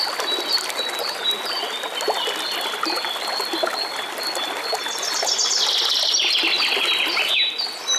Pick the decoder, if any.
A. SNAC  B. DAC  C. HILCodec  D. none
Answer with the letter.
D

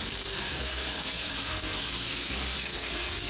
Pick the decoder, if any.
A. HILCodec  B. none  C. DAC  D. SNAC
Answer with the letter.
D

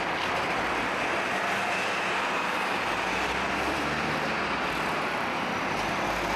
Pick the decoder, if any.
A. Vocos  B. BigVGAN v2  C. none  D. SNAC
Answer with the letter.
C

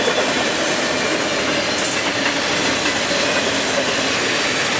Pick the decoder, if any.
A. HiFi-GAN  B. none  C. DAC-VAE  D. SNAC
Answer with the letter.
B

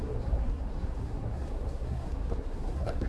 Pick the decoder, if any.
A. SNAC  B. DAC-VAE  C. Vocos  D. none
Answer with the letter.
A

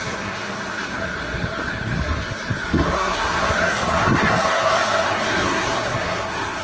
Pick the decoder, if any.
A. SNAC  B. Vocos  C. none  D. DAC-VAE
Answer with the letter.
A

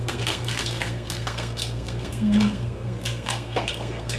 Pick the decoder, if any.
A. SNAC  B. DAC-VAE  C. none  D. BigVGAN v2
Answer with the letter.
A